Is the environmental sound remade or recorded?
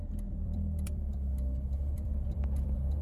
remade